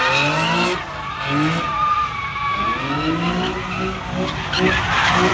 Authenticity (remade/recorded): recorded